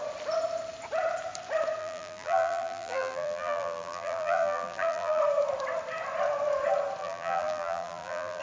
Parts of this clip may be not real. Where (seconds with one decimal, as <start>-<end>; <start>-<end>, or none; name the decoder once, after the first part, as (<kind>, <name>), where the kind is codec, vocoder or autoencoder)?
1.8-5.2 (vocoder, BigVGAN v2); 7.0-8.4